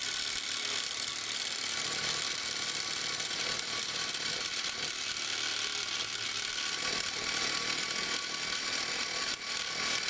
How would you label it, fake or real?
real